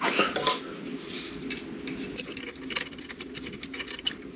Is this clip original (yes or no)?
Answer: yes